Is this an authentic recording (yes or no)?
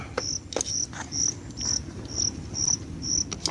yes